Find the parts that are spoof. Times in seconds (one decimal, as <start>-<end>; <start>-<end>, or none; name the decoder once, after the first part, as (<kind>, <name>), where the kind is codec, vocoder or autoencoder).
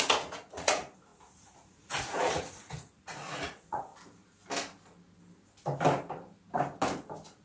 0.0-3.9 (vocoder, Vocos)